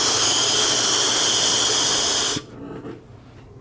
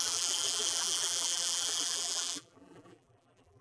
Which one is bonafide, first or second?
first